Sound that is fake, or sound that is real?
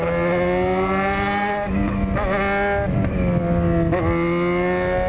real